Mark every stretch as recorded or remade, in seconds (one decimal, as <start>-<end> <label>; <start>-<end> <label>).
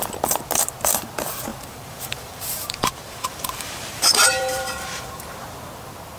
0.0-1.5 recorded; 1.5-5.2 remade; 5.2-6.2 recorded